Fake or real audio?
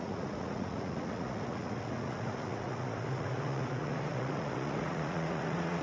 fake